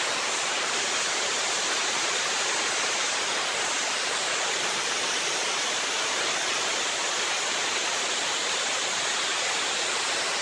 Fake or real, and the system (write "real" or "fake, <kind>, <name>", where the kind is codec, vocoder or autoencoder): real